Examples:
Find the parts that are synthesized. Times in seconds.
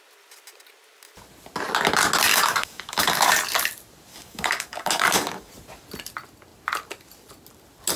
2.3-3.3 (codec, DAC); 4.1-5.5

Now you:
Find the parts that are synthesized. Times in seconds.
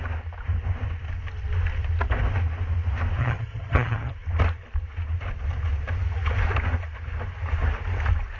3.2-4.1 (vocoder, HiFi-GAN)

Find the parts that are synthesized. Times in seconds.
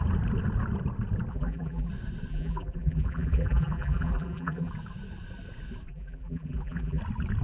1.3-1.9 (vocoder, BigVGAN v2); 2.3-4.7; 5.9-7.0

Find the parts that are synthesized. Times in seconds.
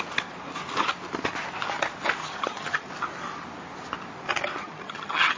2.2-2.9 (vocoder, HiFi-GAN); 4.6-5.4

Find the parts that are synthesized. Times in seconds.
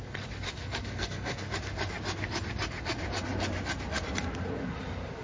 0.6-1.5 (codec, SNAC)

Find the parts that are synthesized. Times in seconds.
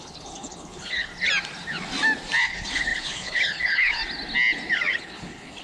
0.0-1.1 (codec, HILCodec); 2.4-4.0; 5.0-5.6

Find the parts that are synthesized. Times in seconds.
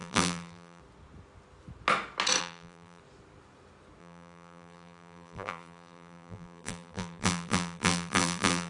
0.0-0.8 (vocoder, BigVGAN v2); 2.4-3.0; 4.0-8.7